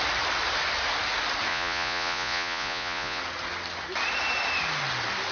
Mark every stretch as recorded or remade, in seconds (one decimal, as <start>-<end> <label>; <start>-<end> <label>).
0.0-1.5 recorded; 1.5-3.2 remade; 3.2-5.3 recorded